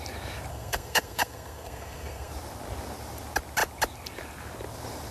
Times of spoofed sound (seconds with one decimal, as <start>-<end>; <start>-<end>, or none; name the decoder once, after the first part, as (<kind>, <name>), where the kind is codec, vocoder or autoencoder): 0.5-2.3 (codec, SNAC)